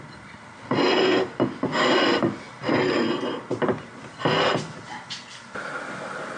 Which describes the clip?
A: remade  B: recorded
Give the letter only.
B